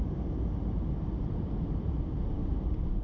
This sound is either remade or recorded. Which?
recorded